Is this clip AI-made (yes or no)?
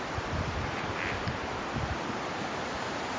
yes